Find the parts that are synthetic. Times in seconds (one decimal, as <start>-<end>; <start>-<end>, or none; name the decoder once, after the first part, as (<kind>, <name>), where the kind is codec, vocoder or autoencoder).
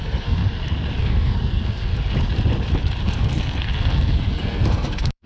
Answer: 0.0-0.4 (codec, SNAC); 1.0-1.9; 3.0-5.3